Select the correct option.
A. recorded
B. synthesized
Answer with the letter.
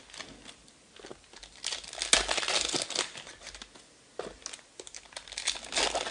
A